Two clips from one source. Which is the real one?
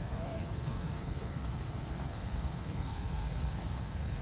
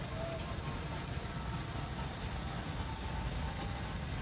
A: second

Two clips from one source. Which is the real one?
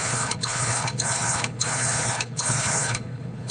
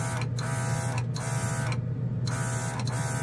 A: second